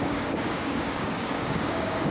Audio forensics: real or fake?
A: fake